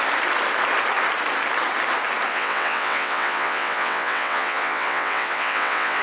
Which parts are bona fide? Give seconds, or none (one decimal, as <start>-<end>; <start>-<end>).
0.0-2.3